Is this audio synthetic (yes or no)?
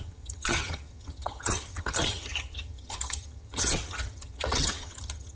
yes